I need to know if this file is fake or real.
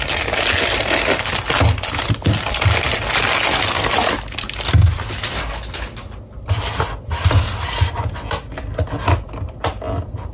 real